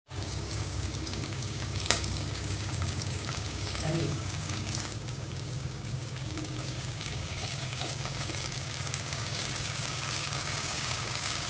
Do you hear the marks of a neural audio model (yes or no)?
yes